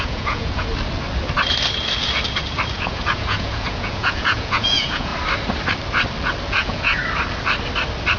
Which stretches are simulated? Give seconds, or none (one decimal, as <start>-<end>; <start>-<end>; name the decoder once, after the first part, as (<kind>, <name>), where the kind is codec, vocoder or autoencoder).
0.0-0.7 (vocoder, Vocos); 2.7-5.1; 6.5-7.0